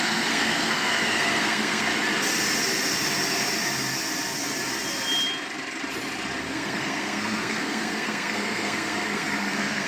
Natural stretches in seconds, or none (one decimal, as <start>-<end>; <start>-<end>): 1.9-6.5